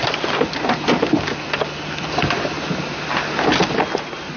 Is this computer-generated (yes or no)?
no